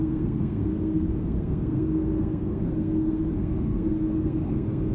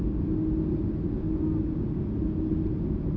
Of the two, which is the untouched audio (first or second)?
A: second